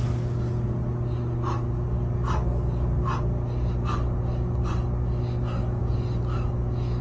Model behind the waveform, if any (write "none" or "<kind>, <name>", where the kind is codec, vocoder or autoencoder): none